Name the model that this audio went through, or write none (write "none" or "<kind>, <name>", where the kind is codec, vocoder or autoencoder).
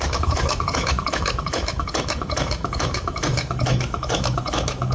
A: autoencoder, DAC-VAE